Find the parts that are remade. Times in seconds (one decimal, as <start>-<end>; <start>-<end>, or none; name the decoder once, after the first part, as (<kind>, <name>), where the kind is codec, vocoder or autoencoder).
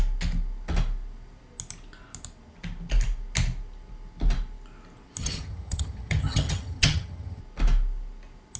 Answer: 5.2-7.4 (vocoder, HiFi-GAN)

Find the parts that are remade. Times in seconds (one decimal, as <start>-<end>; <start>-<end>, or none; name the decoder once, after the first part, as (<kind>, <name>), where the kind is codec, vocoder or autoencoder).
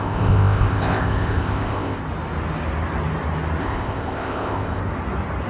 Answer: 0.0-2.0 (codec, ZipCodec); 3.6-4.8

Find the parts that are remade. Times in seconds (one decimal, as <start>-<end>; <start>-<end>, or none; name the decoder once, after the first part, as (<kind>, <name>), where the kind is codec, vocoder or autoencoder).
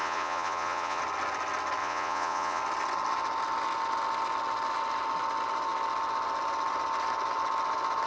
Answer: 0.0-1.0 (vocoder, Vocos); 1.8-2.6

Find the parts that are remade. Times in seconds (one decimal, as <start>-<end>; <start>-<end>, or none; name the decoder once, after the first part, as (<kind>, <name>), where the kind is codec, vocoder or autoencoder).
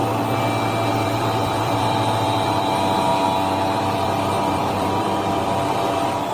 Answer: 1.0-3.1 (vocoder, BigVGAN v2); 4.0-6.3